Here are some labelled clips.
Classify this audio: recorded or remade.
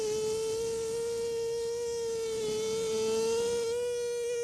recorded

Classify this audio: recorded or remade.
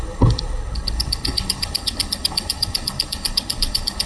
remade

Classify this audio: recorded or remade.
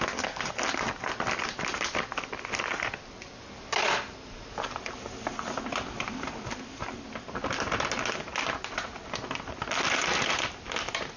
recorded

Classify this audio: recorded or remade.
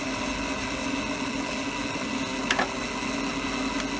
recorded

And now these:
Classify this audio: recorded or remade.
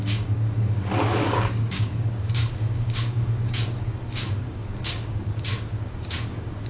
remade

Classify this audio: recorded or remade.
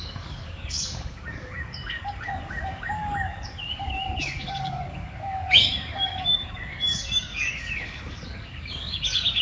remade